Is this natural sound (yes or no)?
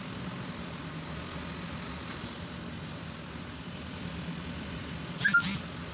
yes